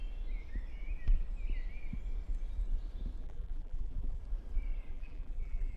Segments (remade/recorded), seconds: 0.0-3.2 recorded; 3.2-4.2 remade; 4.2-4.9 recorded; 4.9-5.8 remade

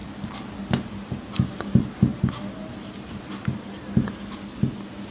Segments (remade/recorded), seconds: 0.0-5.1 recorded

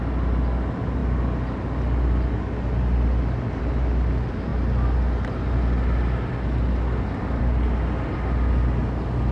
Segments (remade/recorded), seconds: 0.0-9.3 recorded

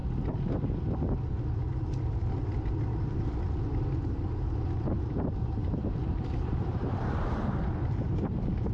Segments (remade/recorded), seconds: 0.0-2.9 recorded; 2.9-7.3 remade; 7.3-8.7 recorded